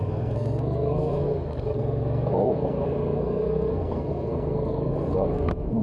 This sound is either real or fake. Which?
fake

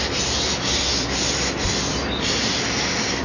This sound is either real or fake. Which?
real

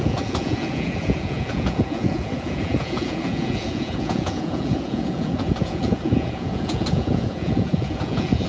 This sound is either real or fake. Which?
fake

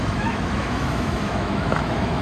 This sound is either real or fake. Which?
fake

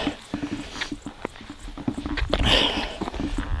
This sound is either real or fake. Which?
real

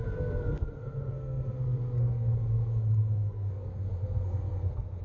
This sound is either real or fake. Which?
fake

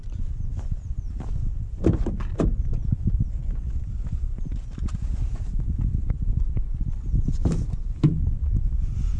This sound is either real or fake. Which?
real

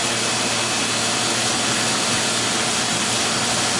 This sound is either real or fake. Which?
real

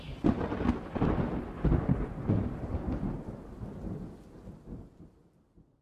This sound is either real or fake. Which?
real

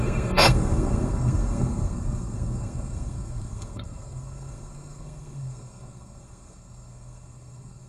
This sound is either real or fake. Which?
fake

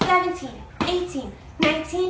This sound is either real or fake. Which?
real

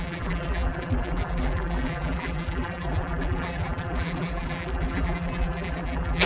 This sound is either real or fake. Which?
fake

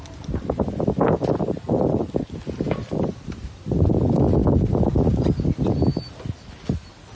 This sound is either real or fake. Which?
real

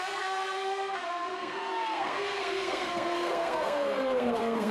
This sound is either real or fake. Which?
fake